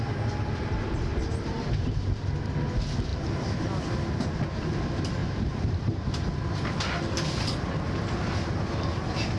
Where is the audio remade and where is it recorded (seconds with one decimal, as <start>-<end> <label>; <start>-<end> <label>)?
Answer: 0.0-1.1 recorded; 1.1-2.0 remade; 2.0-3.1 recorded; 3.1-3.6 remade; 3.6-5.2 recorded; 5.2-6.1 remade; 6.1-9.4 recorded